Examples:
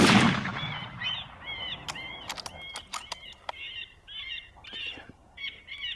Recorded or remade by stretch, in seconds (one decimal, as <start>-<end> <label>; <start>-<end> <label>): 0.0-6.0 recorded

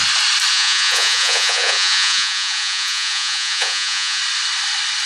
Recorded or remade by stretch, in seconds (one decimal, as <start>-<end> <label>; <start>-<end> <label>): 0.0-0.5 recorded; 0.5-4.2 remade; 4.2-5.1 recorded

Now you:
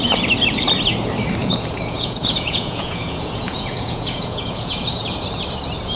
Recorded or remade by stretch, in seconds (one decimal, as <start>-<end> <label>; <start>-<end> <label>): 0.0-1.4 recorded; 1.4-5.0 remade; 5.0-6.0 recorded

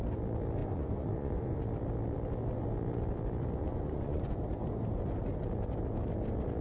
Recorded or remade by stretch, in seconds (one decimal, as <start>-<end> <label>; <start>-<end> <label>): 0.0-0.6 recorded; 0.6-1.6 remade; 1.6-3.6 recorded; 3.6-4.4 remade; 4.4-6.6 recorded